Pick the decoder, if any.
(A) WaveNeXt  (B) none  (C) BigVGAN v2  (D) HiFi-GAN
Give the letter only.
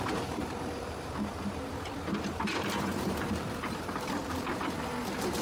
C